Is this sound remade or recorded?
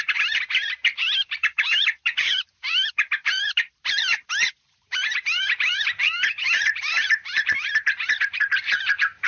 remade